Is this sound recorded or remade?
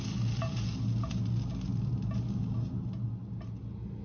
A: recorded